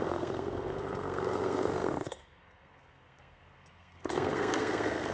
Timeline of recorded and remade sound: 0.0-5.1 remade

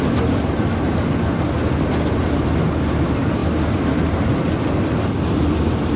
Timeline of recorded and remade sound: 0.0-6.0 recorded

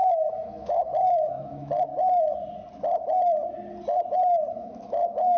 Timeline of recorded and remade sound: 0.0-1.9 remade; 1.9-4.5 recorded; 4.5-5.4 remade

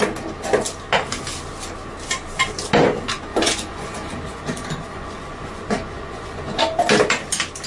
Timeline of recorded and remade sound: 0.0-3.3 recorded; 3.3-6.6 remade; 6.6-7.7 recorded